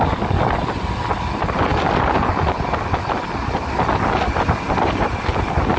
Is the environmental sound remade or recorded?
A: recorded